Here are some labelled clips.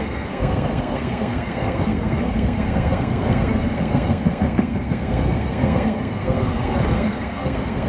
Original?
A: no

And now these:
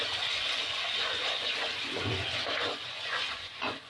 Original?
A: no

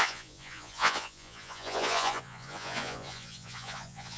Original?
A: no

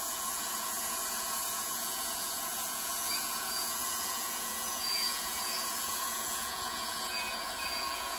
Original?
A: no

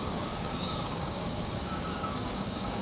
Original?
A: no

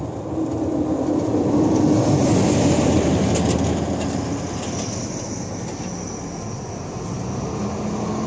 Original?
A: yes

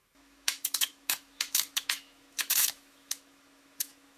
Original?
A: no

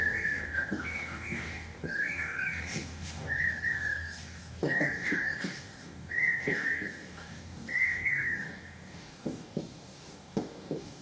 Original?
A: no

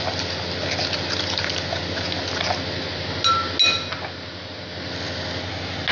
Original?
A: yes